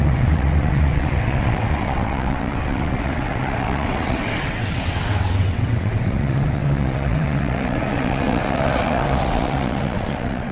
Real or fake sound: fake